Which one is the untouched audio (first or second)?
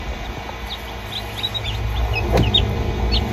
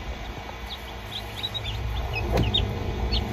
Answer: first